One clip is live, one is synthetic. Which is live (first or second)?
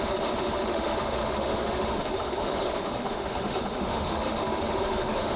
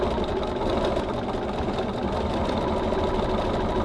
second